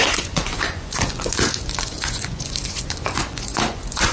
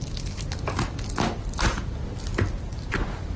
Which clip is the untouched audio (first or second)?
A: second